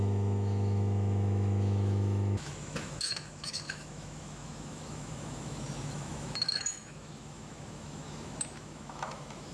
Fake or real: fake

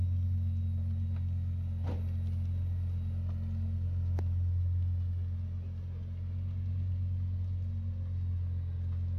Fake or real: real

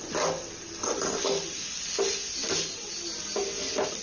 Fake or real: real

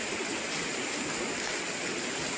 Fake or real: real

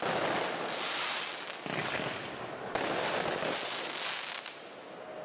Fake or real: real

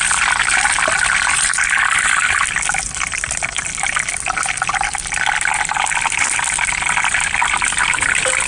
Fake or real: real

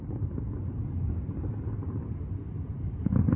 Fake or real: real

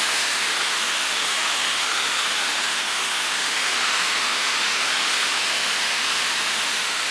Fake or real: fake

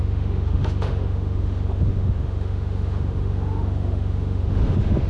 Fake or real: fake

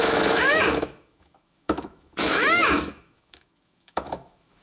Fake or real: fake